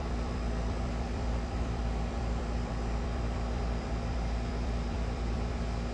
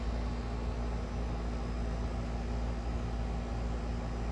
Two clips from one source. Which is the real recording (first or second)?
second